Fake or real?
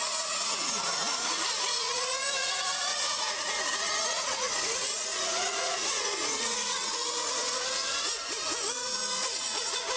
fake